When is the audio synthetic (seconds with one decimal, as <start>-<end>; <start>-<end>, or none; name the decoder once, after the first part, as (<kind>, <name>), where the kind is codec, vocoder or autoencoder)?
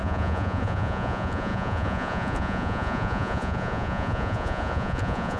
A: 0.0-5.4 (vocoder, Vocos)